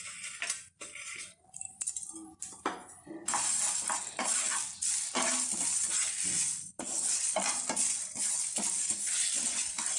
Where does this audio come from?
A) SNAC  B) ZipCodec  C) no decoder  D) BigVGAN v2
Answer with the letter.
C